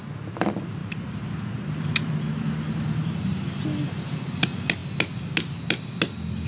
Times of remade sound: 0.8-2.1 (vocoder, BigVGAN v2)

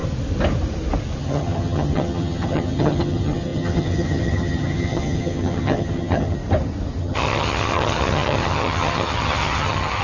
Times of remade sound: 1.2-6.4 (vocoder, HiFi-GAN); 7.0-10.0

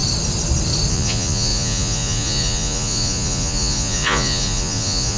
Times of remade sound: 0.9-5.2 (vocoder, Vocos)

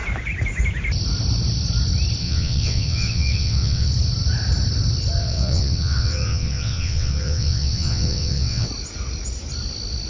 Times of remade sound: 2.2-3.9 (vocoder, WaveNeXt); 5.2-8.7

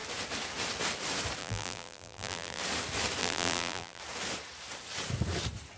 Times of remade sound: 1.4-2.6 (vocoder, BigVGAN v2); 3.2-4.0

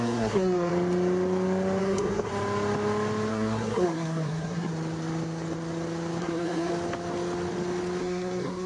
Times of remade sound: 0.0-0.7 (codec, SNAC); 1.8-2.3; 3.3-4.7; 6.2-6.7; 8.0-8.7